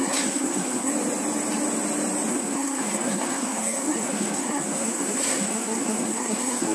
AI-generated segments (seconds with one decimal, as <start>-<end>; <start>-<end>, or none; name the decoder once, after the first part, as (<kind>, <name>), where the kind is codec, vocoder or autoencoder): 0.0-0.9 (codec, SNAC); 2.3-6.7